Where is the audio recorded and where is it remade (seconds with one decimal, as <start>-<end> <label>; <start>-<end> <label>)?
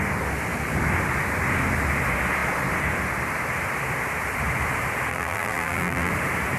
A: 0.0-5.1 recorded; 5.1-6.1 remade; 6.1-6.6 recorded